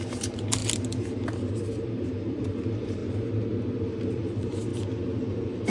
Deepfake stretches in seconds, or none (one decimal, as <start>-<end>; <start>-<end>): 0.0-0.6; 1.5-3.0; 4.0-4.7; 5.3-5.7